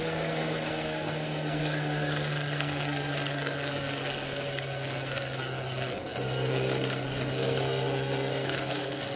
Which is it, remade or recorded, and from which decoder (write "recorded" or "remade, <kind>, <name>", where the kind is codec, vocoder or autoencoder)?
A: remade, codec, SNAC